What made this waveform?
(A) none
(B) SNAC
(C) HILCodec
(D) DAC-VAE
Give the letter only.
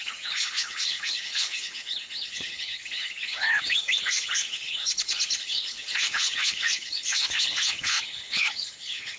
C